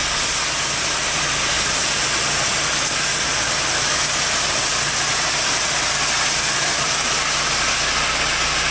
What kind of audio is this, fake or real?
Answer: real